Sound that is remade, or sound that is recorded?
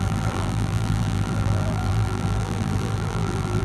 remade